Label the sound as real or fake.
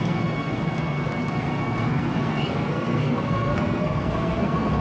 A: fake